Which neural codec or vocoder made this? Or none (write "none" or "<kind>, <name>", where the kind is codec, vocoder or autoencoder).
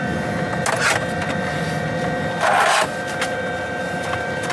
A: none